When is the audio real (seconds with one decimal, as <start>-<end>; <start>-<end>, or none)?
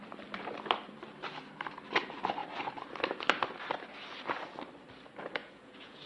0.0-5.4